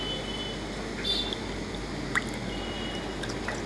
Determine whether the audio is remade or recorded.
recorded